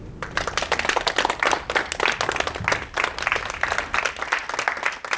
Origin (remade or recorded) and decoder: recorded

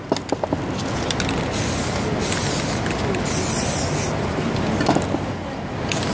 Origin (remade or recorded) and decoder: recorded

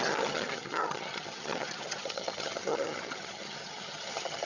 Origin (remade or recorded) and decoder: remade, vocoder, HiFi-GAN